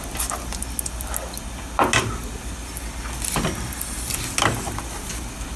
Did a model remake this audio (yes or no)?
no